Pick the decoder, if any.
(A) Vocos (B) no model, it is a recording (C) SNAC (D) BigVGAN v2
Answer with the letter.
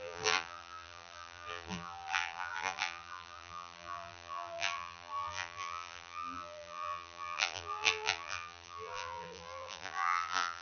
D